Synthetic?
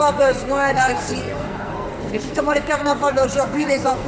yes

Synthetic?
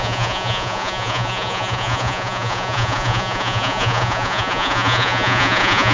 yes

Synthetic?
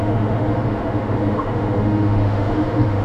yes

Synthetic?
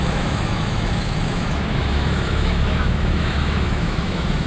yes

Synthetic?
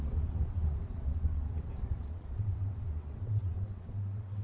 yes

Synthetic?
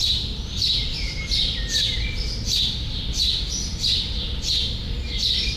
no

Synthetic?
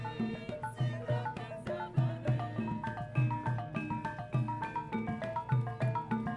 no